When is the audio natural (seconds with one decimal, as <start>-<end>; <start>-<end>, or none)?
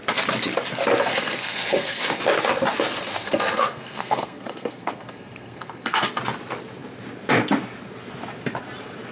0.0-1.1; 2.2-3.1; 6.2-9.1